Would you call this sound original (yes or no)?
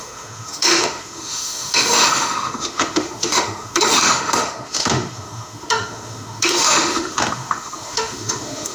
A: no